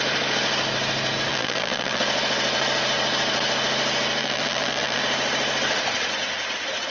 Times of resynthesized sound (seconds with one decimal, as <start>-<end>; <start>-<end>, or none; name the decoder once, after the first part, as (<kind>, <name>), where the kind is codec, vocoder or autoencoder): 1.3-2.0 (vocoder, BigVGAN v2); 4.2-5.0